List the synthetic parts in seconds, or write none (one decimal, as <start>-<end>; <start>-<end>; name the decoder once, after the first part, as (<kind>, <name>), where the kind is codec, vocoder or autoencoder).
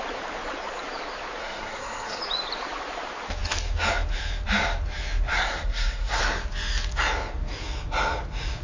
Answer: 1.4-2.2 (codec, SNAC); 5.3-6.2